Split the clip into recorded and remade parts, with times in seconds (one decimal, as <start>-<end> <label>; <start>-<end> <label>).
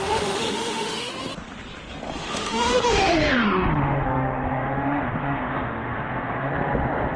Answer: 0.0-1.1 remade; 1.1-2.2 recorded; 2.2-6.5 remade; 6.5-7.2 recorded